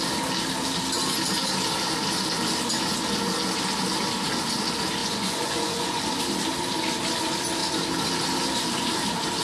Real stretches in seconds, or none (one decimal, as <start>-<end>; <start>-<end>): 0.0-5.0; 6.2-9.4